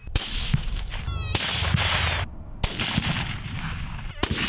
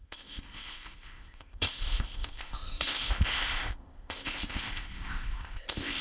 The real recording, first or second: first